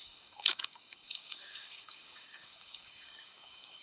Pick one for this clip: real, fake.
fake